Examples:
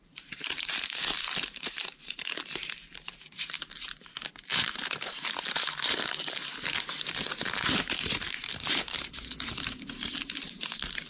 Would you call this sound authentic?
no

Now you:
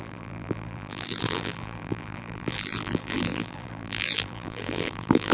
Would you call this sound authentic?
no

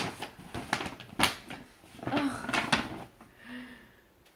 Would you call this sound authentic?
yes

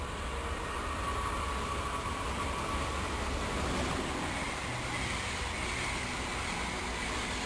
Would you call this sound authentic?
yes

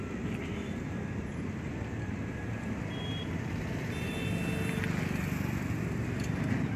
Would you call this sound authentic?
yes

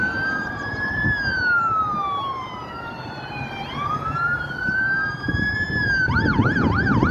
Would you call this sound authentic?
no